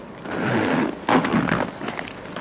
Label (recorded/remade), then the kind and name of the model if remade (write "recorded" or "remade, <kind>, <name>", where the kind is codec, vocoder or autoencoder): recorded